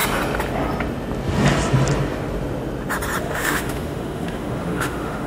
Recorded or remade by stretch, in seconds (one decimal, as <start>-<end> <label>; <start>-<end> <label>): 0.0-3.2 recorded; 3.2-5.3 remade

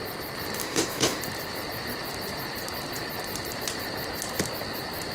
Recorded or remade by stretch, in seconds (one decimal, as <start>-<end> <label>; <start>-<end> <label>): 0.0-0.6 recorded; 0.6-1.2 remade; 1.2-5.1 recorded

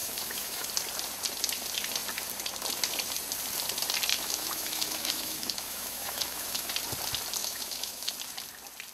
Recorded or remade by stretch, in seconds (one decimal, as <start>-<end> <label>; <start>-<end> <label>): 0.0-0.7 remade; 0.7-4.1 recorded; 4.1-6.7 remade; 6.7-7.4 recorded; 7.4-8.1 remade; 8.1-8.9 recorded

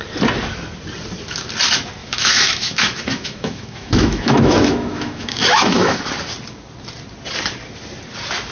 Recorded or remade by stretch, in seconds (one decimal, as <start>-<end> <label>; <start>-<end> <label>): 0.0-2.0 recorded; 2.0-6.0 remade; 6.0-8.5 recorded

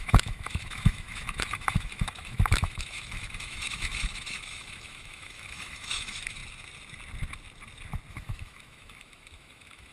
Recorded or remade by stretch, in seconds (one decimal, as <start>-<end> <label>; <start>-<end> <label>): 0.0-6.4 remade; 6.4-8.1 recorded; 8.1-9.9 remade